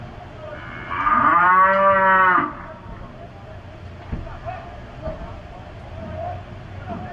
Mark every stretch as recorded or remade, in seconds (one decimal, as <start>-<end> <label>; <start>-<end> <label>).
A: 0.0-1.5 remade; 1.5-5.4 recorded; 5.4-7.1 remade